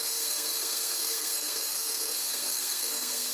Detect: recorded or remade remade